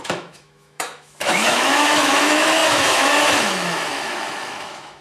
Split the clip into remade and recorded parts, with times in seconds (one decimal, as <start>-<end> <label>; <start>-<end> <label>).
0.0-5.0 remade

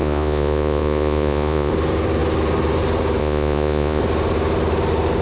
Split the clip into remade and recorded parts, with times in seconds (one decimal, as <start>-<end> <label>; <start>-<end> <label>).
0.0-1.7 remade; 1.7-3.2 recorded; 3.2-4.0 remade; 4.0-5.2 recorded

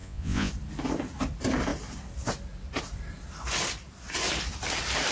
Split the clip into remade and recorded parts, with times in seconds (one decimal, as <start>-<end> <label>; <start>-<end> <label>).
0.0-0.5 remade; 0.5-5.1 recorded

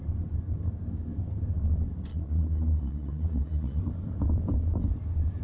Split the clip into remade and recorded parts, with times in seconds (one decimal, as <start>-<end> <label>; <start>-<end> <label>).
0.0-2.1 recorded; 2.1-3.8 remade; 3.8-5.4 recorded

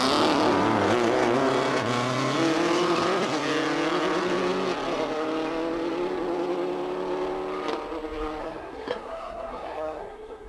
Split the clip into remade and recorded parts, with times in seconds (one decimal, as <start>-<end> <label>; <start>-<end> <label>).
0.0-8.4 recorded; 8.4-10.5 remade

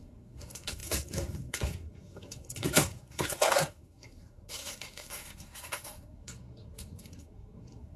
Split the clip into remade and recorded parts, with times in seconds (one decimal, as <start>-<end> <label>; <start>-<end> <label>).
0.0-8.0 remade

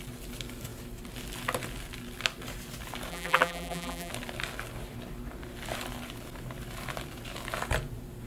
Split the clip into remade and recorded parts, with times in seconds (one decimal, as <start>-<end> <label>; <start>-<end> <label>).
0.0-3.1 recorded; 3.1-4.1 remade; 4.1-8.3 recorded

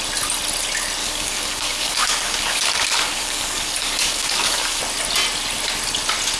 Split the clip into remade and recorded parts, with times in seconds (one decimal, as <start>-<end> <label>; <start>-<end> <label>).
0.0-1.0 recorded; 1.0-4.8 remade; 4.8-6.4 recorded